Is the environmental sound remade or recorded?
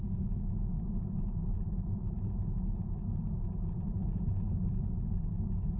recorded